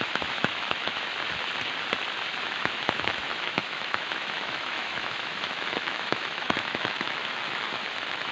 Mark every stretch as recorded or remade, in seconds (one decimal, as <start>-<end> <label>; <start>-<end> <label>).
0.0-1.1 remade; 1.1-2.4 recorded; 2.4-8.3 remade